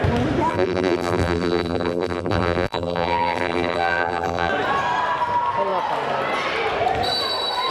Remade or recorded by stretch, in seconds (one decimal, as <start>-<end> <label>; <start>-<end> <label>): 0.0-0.5 recorded; 0.5-4.5 remade; 4.5-7.7 recorded

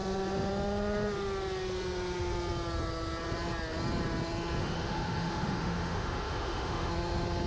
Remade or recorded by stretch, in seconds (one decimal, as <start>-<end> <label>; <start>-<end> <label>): 0.0-4.6 recorded; 4.6-6.9 remade; 6.9-7.5 recorded